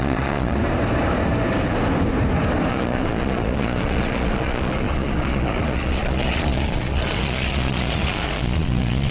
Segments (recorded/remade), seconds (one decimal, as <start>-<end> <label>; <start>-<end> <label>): 0.0-0.6 remade; 0.6-2.7 recorded; 2.7-9.1 remade